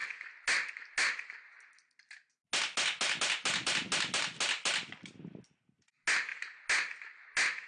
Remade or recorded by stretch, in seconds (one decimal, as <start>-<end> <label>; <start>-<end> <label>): 0.0-7.7 recorded